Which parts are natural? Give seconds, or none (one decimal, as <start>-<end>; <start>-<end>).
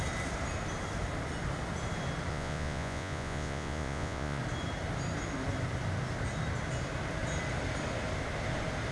0.0-2.3; 4.4-8.9